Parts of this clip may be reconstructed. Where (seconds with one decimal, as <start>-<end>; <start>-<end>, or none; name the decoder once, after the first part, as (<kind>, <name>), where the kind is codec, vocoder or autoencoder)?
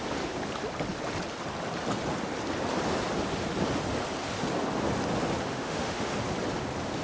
5.5-6.1 (autoencoder, DAC-VAE)